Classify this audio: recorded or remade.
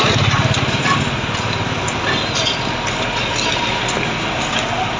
recorded